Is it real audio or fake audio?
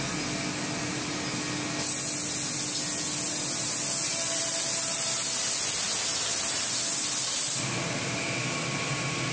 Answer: real